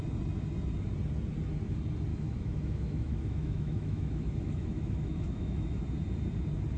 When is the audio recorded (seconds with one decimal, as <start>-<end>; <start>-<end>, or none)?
0.0-2.1; 5.8-6.8